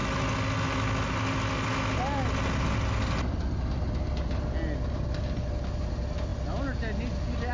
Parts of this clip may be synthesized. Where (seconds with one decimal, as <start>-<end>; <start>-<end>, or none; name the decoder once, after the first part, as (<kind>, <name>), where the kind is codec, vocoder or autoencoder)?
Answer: none